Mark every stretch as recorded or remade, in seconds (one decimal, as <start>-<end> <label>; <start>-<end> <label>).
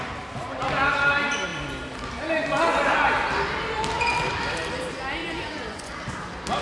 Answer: 0.0-5.2 recorded; 5.2-5.9 remade; 5.9-6.6 recorded